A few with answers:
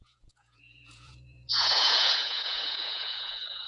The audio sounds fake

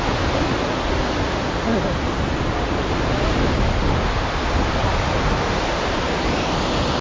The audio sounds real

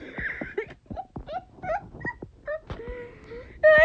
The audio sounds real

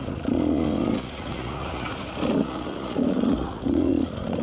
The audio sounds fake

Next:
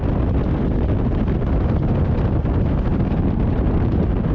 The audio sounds real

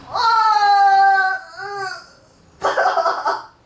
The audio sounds real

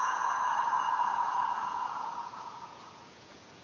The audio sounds fake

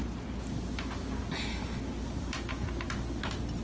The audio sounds real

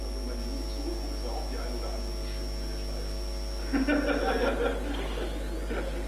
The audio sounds real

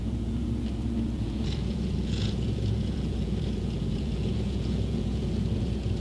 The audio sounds fake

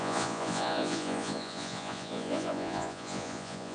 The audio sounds fake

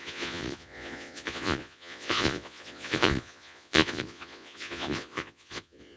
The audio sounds fake